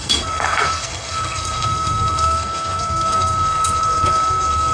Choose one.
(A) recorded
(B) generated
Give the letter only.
B